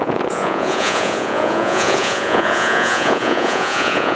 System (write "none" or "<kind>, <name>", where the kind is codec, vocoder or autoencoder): vocoder, Vocos